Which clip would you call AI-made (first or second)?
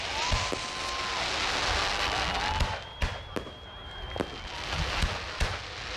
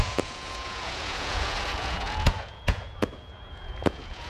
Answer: second